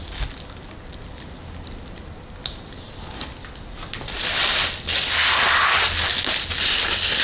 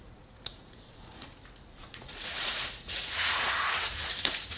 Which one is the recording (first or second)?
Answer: first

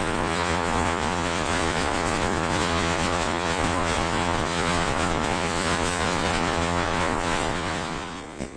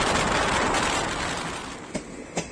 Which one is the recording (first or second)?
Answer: second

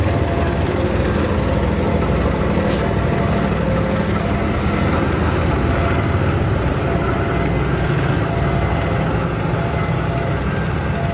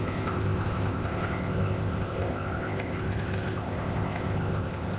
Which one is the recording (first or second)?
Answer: first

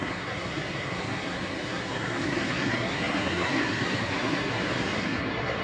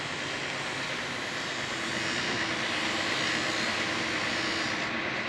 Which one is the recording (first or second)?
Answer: second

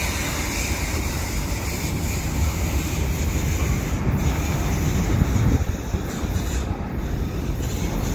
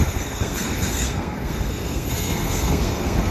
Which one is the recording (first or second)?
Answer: first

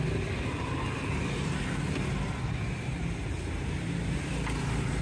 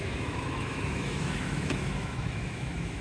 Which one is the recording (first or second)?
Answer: first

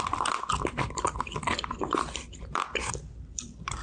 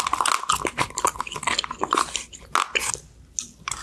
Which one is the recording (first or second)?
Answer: second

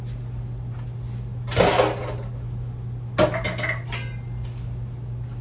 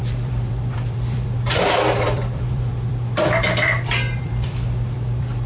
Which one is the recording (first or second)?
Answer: first